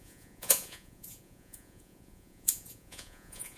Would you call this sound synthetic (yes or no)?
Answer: yes